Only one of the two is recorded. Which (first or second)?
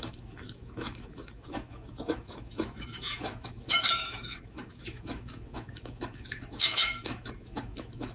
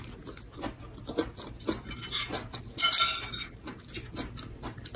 second